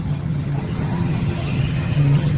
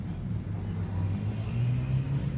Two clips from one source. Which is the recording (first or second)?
second